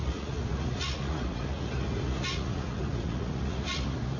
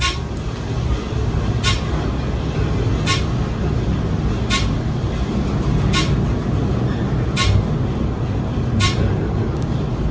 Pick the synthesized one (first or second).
first